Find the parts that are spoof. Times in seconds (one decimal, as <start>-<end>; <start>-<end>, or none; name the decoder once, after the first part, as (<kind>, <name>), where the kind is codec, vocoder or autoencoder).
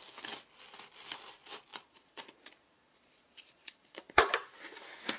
1.7-4.3 (vocoder, Vocos)